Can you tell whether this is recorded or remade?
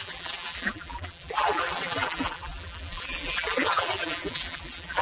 remade